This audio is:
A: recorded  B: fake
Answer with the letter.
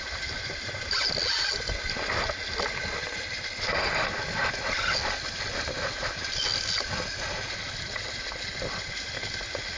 A